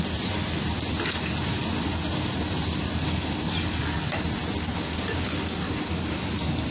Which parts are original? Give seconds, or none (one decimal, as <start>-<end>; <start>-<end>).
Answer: 0.0-6.7